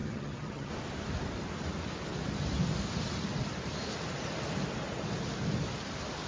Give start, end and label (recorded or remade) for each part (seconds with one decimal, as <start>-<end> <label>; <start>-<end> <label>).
0.0-0.7 remade; 0.7-6.3 recorded